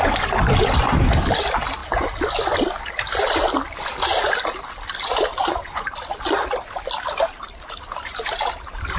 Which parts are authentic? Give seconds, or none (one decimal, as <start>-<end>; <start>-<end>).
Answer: 0.0-5.4; 5.9-9.0